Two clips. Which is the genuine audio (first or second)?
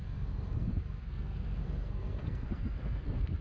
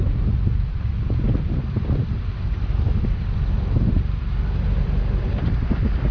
second